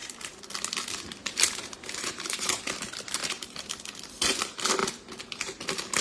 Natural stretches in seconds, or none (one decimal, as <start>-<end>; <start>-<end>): 0.5-1.2; 2.6-3.2; 3.7-6.0